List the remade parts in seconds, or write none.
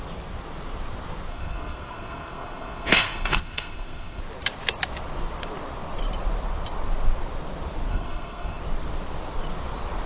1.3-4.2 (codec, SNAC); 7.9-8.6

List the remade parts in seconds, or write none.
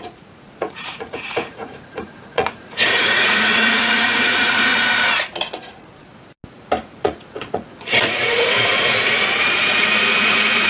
0.0-4.7 (vocoder, Vocos); 5.5-6.1; 6.8-10.7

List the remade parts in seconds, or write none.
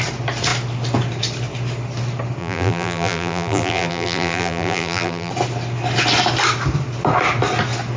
2.4-5.3 (vocoder, BigVGAN v2)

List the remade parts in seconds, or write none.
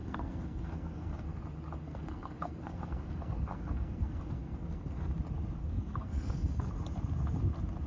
0.0-1.4 (codec, SNAC); 1.8-5.1; 5.6-6.7